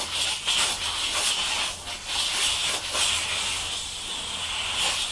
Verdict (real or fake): real